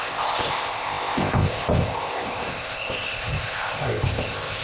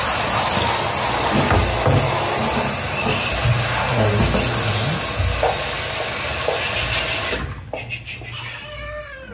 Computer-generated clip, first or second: first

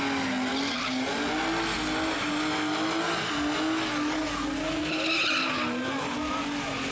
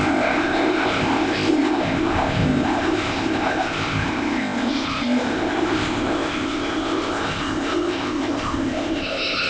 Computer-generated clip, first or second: second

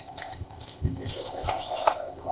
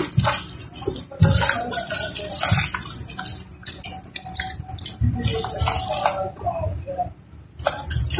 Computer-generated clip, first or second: first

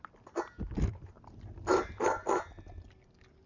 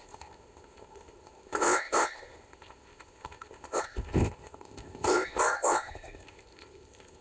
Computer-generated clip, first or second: second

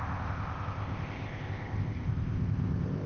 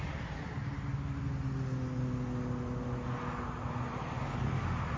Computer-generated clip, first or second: first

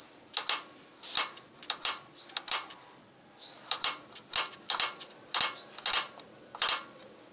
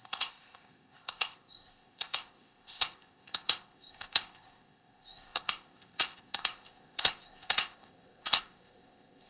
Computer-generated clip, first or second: second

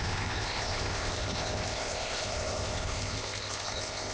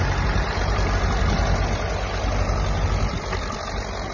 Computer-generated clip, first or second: first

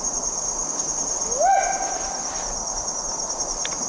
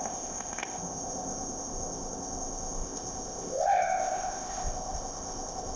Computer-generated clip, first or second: second